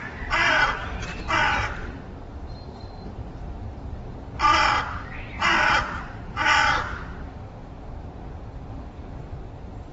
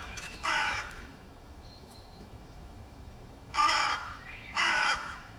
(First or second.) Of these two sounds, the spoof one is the second